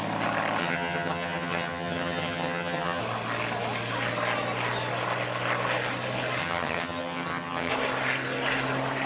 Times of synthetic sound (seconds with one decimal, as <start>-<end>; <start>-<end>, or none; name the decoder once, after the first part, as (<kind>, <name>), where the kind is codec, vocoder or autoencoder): 0.6-3.0 (vocoder, HiFi-GAN); 6.4-7.7